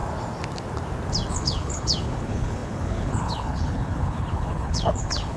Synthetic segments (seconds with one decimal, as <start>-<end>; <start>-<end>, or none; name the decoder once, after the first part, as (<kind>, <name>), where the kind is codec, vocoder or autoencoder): 1.3-5.4 (codec, HILCodec)